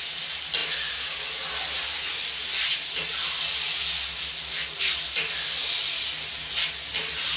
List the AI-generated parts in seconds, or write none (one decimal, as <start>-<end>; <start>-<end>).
none